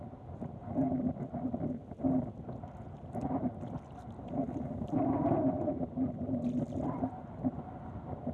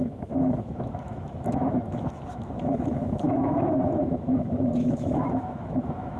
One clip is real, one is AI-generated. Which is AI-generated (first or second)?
second